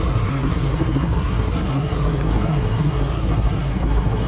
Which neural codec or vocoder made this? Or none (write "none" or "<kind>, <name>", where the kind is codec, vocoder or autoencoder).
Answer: codec, SNAC